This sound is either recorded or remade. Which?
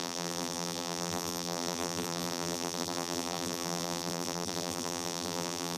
remade